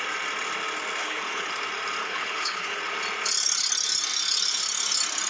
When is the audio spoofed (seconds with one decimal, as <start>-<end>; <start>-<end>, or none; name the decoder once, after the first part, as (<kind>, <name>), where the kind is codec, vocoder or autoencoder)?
1.0-1.5 (codec, HILCodec); 2.0-2.8